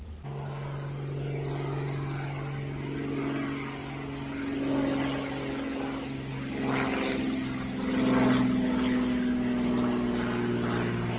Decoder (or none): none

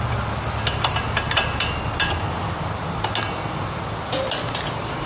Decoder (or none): none